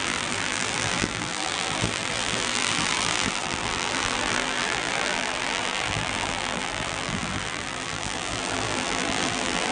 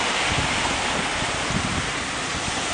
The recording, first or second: second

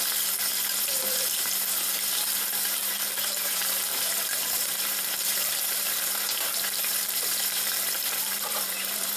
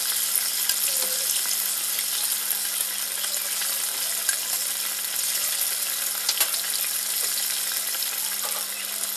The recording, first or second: second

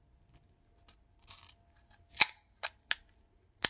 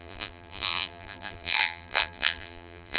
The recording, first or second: first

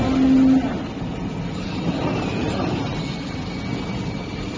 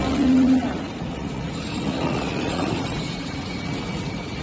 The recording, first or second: first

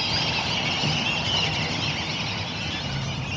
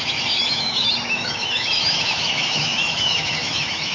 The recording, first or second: first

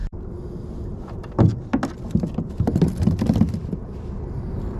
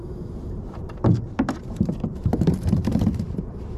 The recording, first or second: first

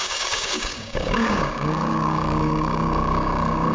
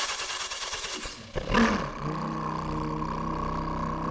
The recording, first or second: second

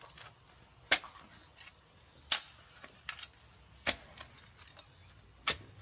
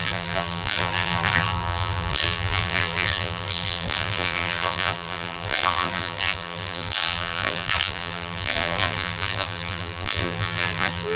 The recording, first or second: first